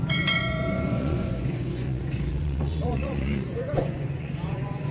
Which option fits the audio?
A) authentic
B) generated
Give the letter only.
B